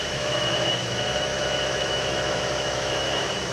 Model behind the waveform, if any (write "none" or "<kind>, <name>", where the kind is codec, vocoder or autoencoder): autoencoder, DAC-VAE